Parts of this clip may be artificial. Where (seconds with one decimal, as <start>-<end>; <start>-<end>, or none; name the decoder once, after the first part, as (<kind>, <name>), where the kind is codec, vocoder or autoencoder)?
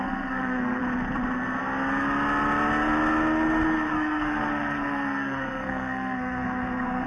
0.0-0.8 (codec, SNAC); 3.9-7.1